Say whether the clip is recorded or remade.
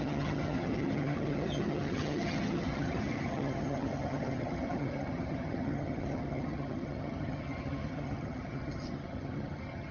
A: remade